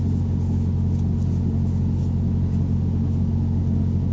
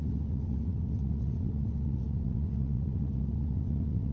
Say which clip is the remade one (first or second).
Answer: second